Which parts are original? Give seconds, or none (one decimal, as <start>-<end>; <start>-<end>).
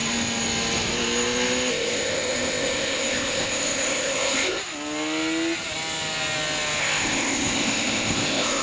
0.0-1.7; 4.6-6.8